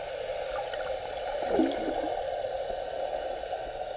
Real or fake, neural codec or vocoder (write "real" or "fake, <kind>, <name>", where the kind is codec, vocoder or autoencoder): real